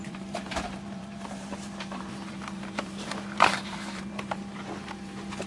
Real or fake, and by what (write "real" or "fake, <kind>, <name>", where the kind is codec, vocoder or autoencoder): fake, vocoder, BigVGAN v2